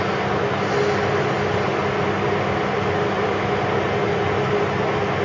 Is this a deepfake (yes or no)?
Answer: no